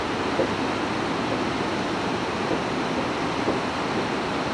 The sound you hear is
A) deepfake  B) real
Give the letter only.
B